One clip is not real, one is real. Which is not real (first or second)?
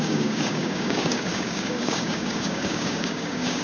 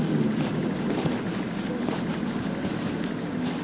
first